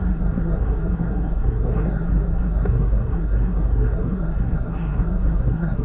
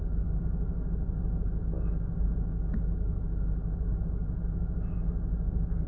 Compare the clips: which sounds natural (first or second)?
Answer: second